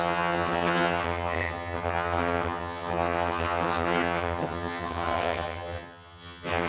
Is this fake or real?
fake